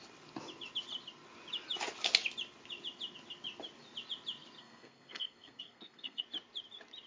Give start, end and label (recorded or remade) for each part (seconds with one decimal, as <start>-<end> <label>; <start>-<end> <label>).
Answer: 0.0-4.6 recorded; 4.6-6.2 remade; 6.2-7.1 recorded